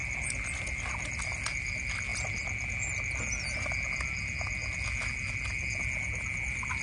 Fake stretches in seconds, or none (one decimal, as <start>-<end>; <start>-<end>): none